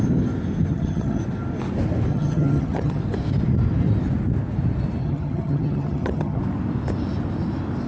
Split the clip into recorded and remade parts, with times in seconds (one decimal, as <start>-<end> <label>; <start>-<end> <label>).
0.0-0.7 recorded; 0.7-1.2 remade; 1.2-2.1 recorded; 2.1-3.0 remade; 3.0-5.0 recorded; 5.0-6.4 remade; 6.4-7.9 recorded